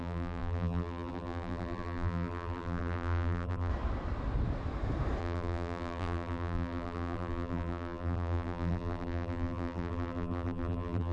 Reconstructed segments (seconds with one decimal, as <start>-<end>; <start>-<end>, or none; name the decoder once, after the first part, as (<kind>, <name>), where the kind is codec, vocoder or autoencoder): 0.0-3.7 (vocoder, BigVGAN v2); 5.2-11.1